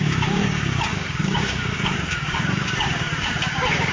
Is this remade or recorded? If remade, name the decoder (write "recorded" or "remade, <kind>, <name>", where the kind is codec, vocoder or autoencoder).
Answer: remade, codec, DAC